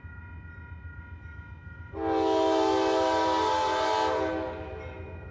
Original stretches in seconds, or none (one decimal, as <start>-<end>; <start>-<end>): 0.0-5.3